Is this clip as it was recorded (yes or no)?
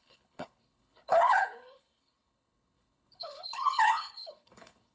no